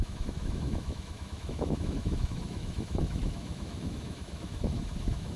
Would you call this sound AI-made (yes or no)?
yes